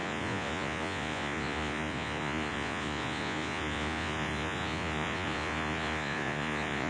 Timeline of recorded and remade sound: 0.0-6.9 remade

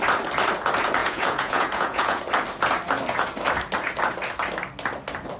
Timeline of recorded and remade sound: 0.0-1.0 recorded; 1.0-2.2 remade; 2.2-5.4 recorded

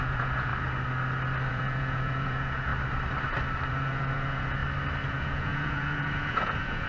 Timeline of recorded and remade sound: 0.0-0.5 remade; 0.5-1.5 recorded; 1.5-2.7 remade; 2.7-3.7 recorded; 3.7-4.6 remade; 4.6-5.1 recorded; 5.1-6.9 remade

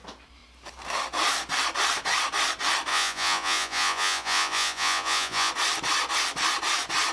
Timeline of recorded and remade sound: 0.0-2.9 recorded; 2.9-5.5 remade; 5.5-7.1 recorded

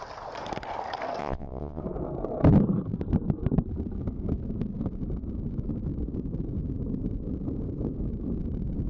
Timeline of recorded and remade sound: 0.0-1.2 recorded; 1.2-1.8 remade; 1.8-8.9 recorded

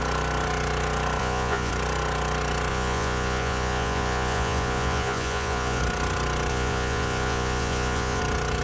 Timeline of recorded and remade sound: 0.0-1.2 recorded; 1.2-1.7 remade; 1.7-2.7 recorded; 2.7-5.8 remade; 5.8-6.5 recorded; 6.5-8.2 remade; 8.2-8.6 recorded

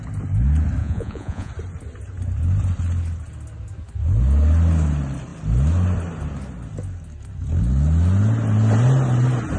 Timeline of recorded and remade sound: 0.0-0.8 recorded; 0.8-1.5 remade; 1.5-9.6 recorded

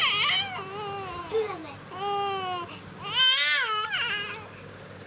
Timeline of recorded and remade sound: 0.0-1.2 recorded; 1.2-1.6 remade; 1.6-5.1 recorded